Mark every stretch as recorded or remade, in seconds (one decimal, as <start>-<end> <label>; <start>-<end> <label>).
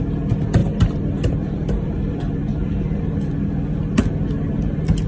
0.0-0.6 recorded; 0.6-3.0 remade; 3.0-5.1 recorded